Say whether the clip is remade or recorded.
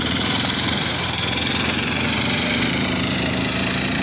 remade